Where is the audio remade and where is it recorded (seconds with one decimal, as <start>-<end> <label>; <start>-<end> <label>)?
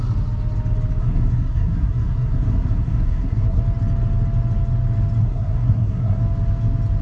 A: 0.0-1.0 recorded; 1.0-3.6 remade; 3.6-5.2 recorded; 5.2-6.2 remade; 6.2-7.0 recorded